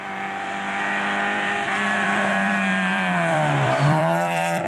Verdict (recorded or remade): remade